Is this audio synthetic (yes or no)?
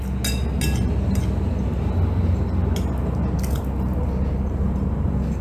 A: no